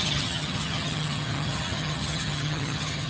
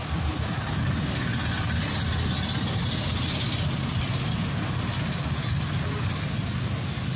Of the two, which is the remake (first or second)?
first